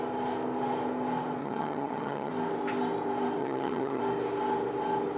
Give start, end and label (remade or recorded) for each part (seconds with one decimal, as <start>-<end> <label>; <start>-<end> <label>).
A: 0.0-1.4 recorded; 1.4-2.3 remade; 2.3-3.4 recorded; 3.4-4.0 remade; 4.0-5.2 recorded